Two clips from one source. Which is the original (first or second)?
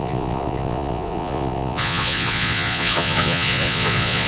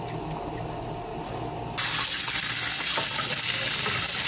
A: second